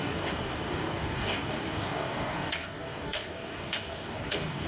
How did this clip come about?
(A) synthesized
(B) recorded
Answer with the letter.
A